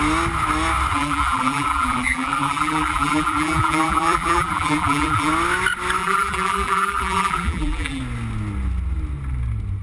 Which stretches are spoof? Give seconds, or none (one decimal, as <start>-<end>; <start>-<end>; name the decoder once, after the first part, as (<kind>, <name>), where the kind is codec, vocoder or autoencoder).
0.9-5.3 (vocoder, BigVGAN v2); 6.0-8.0